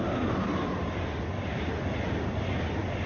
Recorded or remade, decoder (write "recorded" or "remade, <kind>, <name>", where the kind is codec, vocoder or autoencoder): recorded